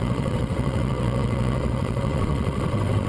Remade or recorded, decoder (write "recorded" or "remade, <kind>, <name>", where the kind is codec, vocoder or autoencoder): remade, vocoder, WaveNeXt